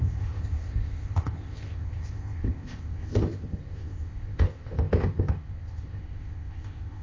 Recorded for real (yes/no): no